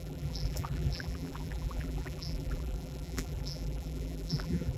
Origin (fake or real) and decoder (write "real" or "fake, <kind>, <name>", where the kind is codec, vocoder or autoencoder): fake, vocoder, BigVGAN v2